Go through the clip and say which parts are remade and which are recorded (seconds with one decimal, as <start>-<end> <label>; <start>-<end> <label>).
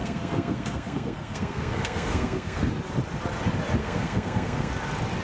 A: 0.0-2.7 remade; 2.7-3.8 recorded; 3.8-4.7 remade; 4.7-5.2 recorded